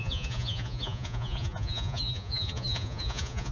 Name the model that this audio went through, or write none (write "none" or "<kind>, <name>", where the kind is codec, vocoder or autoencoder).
vocoder, Vocos